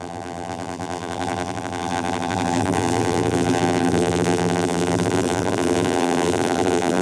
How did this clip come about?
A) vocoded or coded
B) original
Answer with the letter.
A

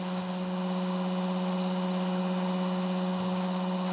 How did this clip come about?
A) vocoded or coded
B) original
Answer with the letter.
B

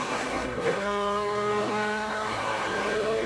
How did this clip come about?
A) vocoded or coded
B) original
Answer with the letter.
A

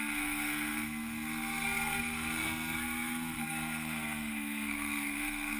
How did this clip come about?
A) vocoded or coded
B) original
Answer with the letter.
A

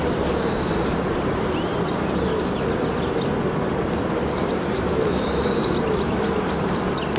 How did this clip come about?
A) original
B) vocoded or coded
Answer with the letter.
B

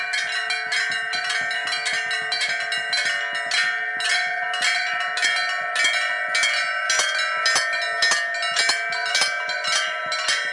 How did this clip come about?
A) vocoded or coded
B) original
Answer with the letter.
B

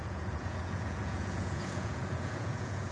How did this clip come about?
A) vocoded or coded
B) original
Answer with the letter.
A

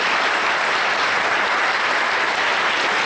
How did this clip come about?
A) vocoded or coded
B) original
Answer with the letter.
B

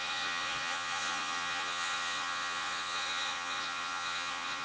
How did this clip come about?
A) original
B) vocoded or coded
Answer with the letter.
B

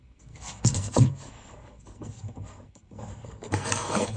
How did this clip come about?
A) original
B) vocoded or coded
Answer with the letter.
B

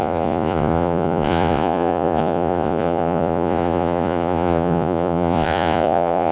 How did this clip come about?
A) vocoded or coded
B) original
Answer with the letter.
A